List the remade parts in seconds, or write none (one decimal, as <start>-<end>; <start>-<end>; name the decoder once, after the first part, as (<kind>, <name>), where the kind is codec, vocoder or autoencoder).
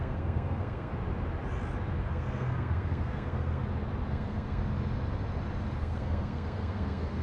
0.0-0.9 (codec, SNAC); 2.0-3.6; 4.1-4.6; 5.8-7.2